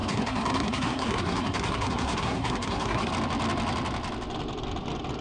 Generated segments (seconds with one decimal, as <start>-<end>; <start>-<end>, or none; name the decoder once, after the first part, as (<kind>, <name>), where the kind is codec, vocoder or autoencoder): 0.0-3.1 (codec, SNAC)